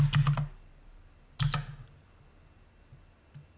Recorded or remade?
recorded